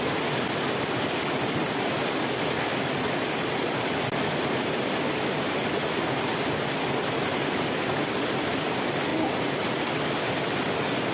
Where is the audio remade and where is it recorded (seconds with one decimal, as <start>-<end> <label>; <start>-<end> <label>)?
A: 0.0-11.1 recorded